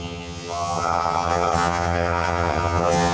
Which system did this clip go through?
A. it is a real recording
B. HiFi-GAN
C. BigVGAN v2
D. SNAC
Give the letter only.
B